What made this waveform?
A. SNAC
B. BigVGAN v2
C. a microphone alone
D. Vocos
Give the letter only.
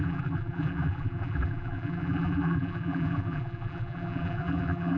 B